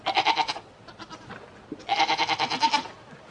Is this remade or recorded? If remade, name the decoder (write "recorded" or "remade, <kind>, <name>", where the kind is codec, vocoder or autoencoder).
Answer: recorded